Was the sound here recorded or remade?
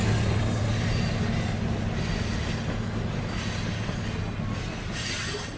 recorded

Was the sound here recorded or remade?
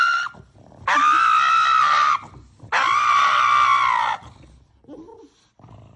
recorded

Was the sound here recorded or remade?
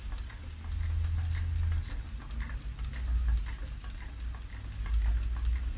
recorded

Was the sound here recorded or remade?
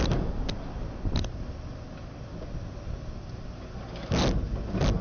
recorded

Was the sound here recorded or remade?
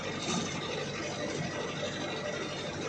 recorded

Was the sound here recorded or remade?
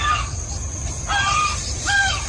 recorded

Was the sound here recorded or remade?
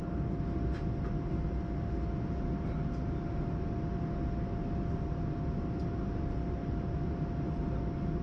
recorded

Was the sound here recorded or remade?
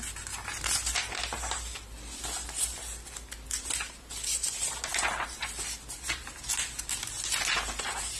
recorded